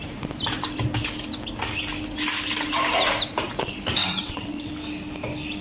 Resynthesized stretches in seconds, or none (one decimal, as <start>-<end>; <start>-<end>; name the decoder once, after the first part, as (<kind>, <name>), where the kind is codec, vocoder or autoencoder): 4.0-4.7 (vocoder, WaveNeXt)

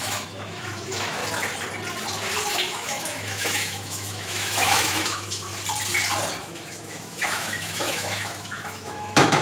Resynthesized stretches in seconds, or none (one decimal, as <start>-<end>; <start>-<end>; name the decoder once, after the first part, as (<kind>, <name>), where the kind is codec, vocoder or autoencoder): 0.0-1.2 (autoencoder, DAC-VAE); 2.5-5.5; 6.4-9.4